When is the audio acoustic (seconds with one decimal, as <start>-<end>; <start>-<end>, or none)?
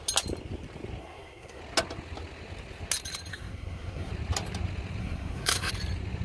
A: 0.0-1.0; 1.6-3.3; 4.1-5.0; 5.7-6.2